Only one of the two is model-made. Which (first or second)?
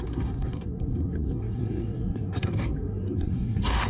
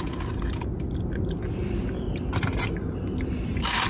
first